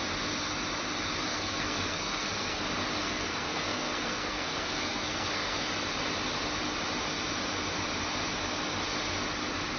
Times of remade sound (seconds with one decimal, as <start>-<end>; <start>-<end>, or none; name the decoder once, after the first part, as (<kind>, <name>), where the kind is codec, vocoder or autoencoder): 1.3-2.6 (codec, SNAC); 3.0-5.7